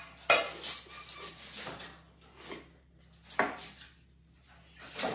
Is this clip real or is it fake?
real